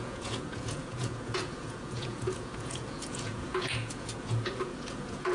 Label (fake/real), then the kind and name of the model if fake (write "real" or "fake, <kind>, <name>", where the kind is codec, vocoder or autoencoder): fake, vocoder, Vocos